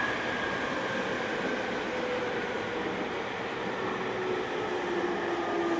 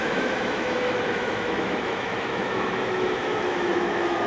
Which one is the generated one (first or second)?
second